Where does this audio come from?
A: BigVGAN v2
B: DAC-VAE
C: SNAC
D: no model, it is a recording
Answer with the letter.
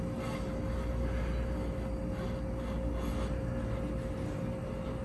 D